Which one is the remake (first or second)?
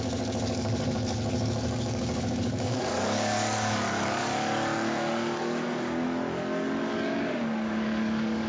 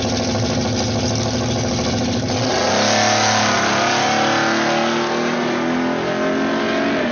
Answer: first